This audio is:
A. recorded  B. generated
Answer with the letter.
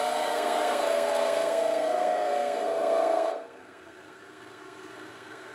B